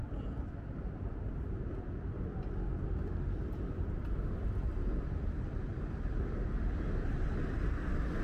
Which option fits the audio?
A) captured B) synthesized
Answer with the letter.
A